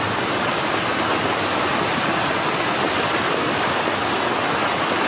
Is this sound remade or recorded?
recorded